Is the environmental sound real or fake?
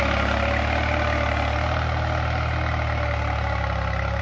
real